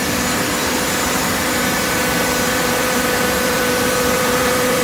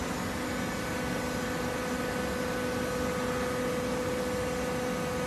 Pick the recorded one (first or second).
second